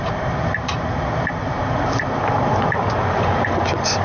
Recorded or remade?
remade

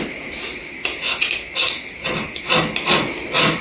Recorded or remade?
recorded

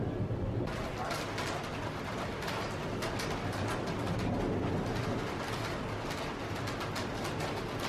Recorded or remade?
recorded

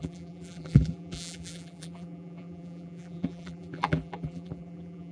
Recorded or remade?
remade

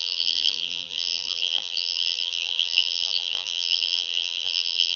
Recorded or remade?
remade